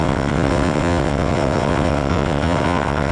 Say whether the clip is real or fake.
fake